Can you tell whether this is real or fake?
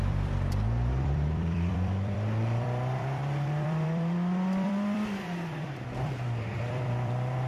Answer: fake